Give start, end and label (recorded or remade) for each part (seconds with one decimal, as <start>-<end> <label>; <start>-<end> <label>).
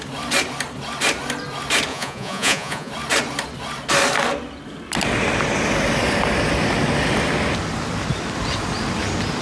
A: 0.0-1.9 recorded; 1.9-2.9 remade; 2.9-9.4 recorded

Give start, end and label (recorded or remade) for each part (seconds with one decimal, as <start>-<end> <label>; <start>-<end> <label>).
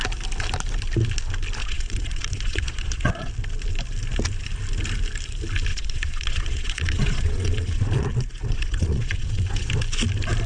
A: 0.0-1.6 recorded; 1.6-3.3 remade; 3.3-5.7 recorded; 5.7-9.7 remade; 9.7-10.5 recorded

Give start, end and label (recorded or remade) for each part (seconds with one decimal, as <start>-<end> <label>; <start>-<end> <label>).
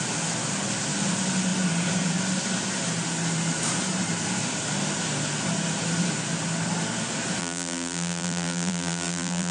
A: 0.0-7.4 recorded; 7.4-9.5 remade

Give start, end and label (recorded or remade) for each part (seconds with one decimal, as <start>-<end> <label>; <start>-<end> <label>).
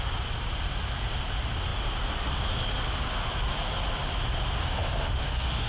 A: 0.0-4.6 recorded; 4.6-5.7 remade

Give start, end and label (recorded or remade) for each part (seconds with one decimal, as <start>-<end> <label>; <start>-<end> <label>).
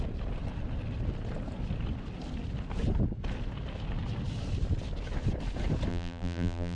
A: 0.0-5.9 recorded; 5.9-6.8 remade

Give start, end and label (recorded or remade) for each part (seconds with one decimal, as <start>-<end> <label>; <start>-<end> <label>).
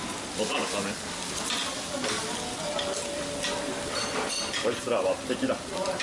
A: 0.0-0.6 remade; 0.6-3.1 recorded; 3.1-6.0 remade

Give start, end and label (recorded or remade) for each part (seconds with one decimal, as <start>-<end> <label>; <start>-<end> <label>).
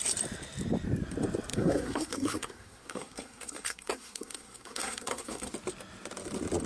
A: 0.0-1.5 recorded; 1.5-5.5 remade; 5.5-6.7 recorded